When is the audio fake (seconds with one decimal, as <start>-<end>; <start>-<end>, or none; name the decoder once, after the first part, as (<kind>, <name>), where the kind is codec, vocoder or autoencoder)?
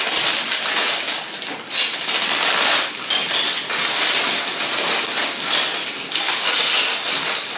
none